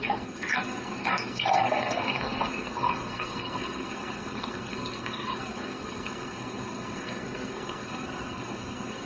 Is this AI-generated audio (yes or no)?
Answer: yes